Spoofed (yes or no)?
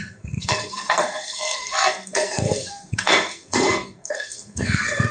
yes